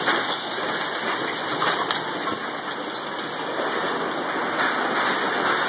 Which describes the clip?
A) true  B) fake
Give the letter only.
A